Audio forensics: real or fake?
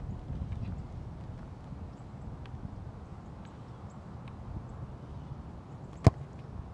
real